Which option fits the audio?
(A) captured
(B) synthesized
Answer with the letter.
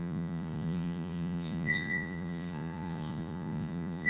B